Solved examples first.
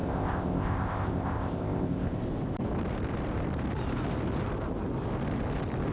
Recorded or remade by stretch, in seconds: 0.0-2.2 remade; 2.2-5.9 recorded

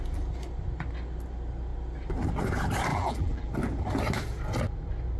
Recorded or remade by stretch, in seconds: 0.0-2.9 recorded; 2.9-3.5 remade; 3.5-5.2 recorded